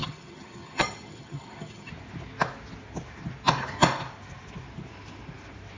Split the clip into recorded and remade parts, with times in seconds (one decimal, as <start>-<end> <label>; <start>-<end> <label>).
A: 0.0-1.9 remade; 1.9-5.8 recorded